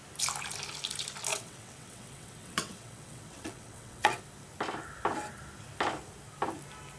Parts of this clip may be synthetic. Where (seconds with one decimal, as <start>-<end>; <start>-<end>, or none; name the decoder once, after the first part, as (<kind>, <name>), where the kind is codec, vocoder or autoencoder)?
1.3-4.2 (vocoder, WaveNeXt)

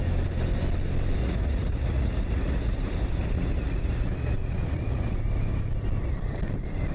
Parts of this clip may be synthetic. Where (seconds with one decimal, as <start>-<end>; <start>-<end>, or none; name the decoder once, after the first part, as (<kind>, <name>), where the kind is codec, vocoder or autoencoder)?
1.2-5.2 (vocoder, Vocos)

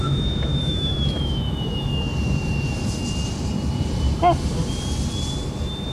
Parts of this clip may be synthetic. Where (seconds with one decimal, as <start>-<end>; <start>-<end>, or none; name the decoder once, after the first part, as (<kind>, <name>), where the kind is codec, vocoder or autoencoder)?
0.0-2.1 (autoencoder, DAC-VAE)

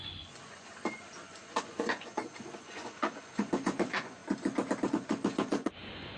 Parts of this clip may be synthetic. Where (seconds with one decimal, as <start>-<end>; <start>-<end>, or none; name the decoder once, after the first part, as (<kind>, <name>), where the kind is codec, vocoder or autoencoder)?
0.0-4.2 (vocoder, Vocos); 4.9-6.2

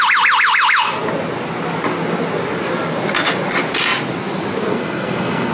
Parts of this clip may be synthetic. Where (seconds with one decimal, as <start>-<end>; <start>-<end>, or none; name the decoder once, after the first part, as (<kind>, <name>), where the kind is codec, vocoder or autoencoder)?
4.7-5.5 (codec, SNAC)

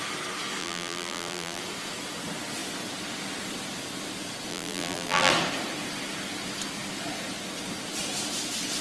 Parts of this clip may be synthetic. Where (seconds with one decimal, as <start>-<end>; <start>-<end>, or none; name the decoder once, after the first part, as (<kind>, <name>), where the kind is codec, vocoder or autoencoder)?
0.6-1.6 (vocoder, BigVGAN v2); 4.5-5.3